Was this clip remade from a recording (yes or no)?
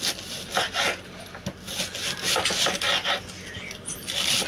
no